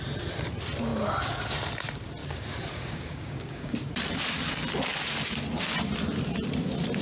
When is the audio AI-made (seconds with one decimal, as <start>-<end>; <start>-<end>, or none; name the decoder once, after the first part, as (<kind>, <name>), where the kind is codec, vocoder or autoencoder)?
2.2-3.9 (codec, DAC)